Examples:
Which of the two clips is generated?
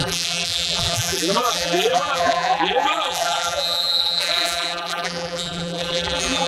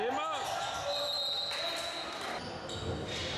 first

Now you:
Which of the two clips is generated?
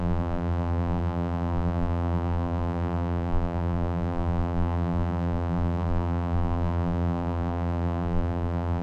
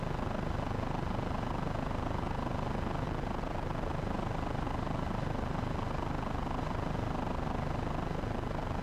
first